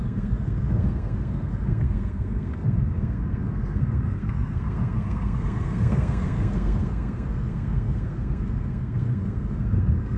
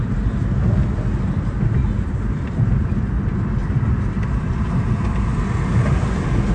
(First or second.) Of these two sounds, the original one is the second